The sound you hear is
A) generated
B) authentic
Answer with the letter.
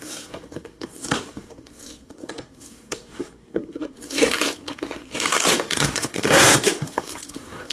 A